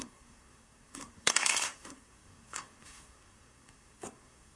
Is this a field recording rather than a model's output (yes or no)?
no